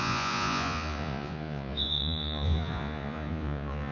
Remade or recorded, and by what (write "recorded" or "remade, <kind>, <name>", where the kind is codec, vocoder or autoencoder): remade, vocoder, Vocos